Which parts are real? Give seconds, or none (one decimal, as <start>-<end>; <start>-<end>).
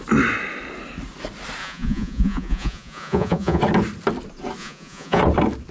0.0-1.6; 3.6-4.6; 5.2-5.7